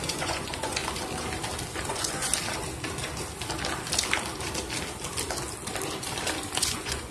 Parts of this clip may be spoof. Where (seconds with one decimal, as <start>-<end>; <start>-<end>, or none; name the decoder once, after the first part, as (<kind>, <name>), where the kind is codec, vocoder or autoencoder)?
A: 0.0-0.8 (vocoder, Vocos); 1.9-2.3; 6.6-7.1